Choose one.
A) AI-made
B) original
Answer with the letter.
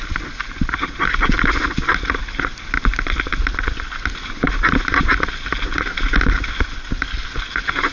B